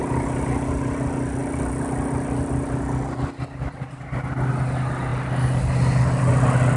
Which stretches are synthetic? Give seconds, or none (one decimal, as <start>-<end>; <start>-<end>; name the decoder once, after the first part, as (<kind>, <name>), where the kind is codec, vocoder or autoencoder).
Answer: 0.0-6.8 (vocoder, BigVGAN v2)